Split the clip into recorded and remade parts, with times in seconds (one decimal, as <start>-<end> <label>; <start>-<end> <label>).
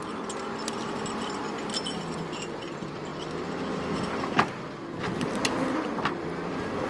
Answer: 0.0-6.9 recorded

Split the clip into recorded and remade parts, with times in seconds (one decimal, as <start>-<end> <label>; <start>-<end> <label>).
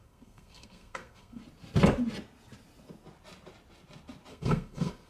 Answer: 0.0-1.4 remade; 1.4-4.3 recorded; 4.3-5.1 remade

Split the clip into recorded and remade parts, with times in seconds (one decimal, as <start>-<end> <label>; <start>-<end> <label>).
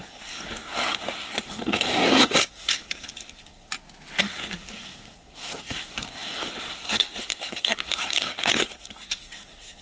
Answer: 0.0-3.7 remade; 3.7-4.2 recorded; 4.2-9.8 remade